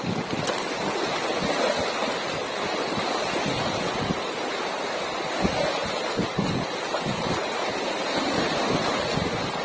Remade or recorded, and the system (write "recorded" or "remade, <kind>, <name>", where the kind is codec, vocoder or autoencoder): recorded